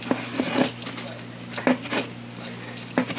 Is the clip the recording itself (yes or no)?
yes